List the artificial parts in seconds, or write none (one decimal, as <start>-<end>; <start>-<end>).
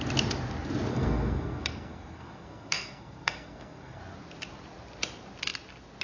0.9-4.0